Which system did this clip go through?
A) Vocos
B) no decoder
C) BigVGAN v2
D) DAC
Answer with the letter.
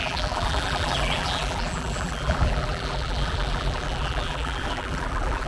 C